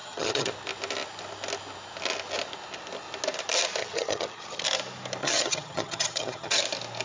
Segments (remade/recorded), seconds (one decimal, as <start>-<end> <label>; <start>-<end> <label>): 0.0-0.5 remade; 0.5-3.8 recorded; 3.8-4.6 remade; 4.6-5.2 recorded; 5.2-6.6 remade; 6.6-7.0 recorded